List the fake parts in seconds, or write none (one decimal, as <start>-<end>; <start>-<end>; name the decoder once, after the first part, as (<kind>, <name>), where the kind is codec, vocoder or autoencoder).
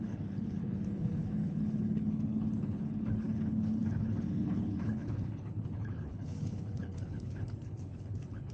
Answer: 0.0-8.5 (codec, HILCodec)